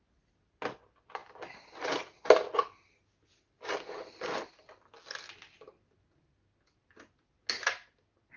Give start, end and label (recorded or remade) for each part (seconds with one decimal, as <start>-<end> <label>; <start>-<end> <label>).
0.0-8.4 recorded